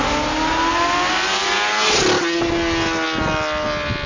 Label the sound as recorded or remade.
recorded